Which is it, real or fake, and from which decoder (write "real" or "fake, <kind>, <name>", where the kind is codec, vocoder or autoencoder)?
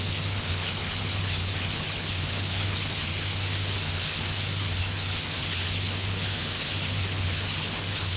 fake, codec, HILCodec